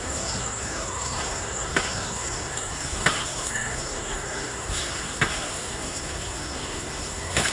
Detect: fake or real fake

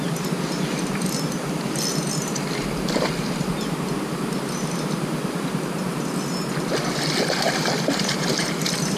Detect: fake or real real